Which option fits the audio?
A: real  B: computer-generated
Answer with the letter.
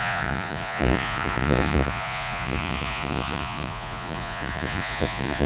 B